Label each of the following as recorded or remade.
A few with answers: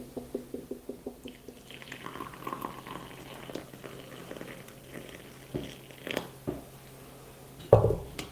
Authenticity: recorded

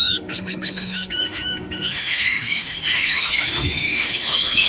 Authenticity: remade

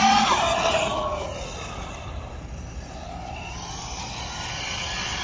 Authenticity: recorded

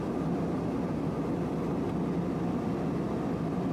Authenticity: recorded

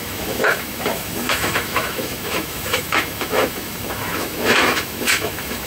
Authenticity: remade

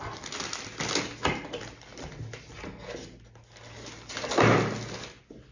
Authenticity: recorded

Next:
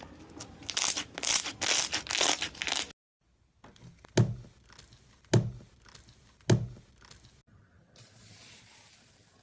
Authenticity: recorded